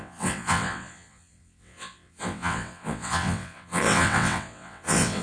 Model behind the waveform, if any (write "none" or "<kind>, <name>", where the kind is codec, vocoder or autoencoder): vocoder, WaveNeXt